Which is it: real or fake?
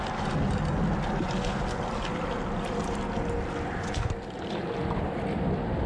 real